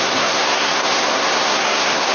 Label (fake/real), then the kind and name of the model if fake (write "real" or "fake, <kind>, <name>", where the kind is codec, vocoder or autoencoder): fake, codec, SNAC